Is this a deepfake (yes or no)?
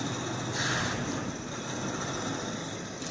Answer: no